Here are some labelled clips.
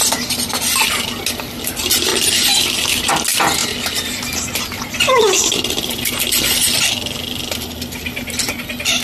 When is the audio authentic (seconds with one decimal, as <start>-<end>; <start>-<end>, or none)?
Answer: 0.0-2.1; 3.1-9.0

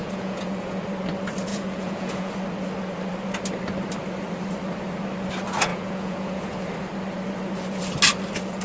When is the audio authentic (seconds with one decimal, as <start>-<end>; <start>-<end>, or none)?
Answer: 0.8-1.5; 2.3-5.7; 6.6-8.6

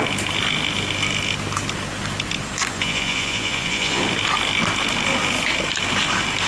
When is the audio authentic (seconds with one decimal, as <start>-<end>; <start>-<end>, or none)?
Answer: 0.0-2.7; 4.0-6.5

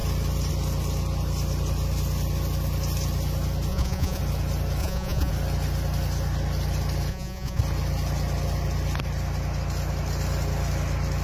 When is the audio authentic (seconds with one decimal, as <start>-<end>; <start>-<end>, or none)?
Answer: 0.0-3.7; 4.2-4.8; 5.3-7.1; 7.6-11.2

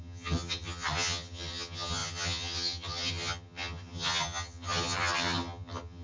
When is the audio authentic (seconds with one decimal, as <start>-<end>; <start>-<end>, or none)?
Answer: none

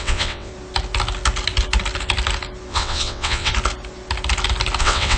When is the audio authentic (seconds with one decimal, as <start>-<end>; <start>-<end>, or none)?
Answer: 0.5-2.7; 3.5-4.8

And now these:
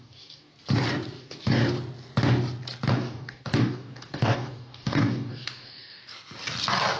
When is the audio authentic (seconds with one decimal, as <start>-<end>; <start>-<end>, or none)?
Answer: 0.5-1.2; 1.6-2.9; 6.1-7.0